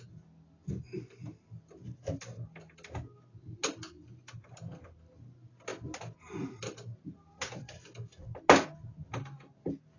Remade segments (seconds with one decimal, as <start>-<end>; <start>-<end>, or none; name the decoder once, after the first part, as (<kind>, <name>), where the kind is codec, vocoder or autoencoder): none